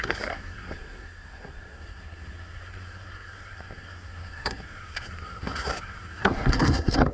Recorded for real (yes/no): no